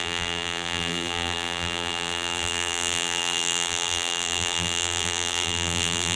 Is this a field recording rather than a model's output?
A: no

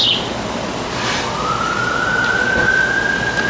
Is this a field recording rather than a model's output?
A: yes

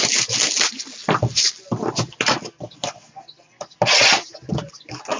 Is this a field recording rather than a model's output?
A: yes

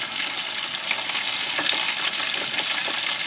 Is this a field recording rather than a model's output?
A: yes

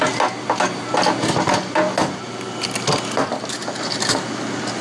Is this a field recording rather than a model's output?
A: yes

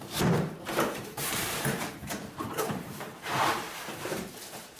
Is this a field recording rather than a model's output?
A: no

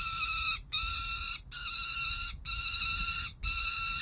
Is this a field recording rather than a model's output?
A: yes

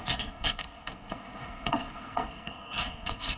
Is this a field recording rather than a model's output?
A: no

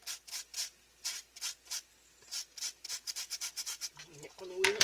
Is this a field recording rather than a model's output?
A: yes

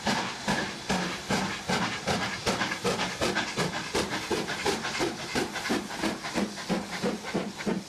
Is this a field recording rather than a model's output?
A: no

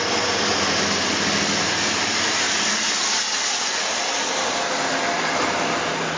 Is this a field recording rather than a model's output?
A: yes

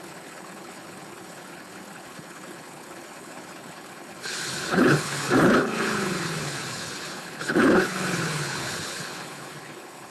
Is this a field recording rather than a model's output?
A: no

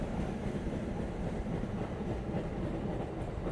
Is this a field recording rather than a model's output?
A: yes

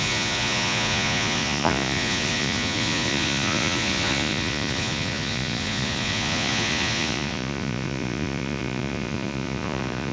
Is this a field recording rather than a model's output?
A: no